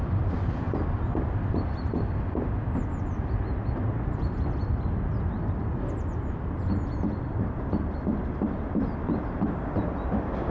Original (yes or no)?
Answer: yes